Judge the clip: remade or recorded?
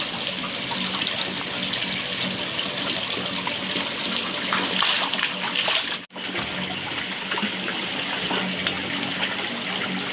recorded